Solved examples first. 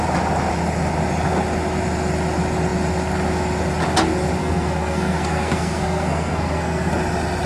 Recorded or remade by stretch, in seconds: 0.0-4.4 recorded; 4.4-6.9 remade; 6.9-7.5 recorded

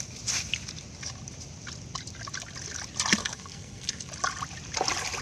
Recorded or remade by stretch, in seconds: 0.0-3.2 recorded; 3.2-4.1 remade; 4.1-5.2 recorded